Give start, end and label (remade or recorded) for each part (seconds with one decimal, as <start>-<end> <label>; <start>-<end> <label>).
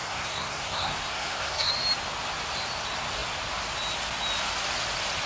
0.0-1.7 remade; 1.7-5.3 recorded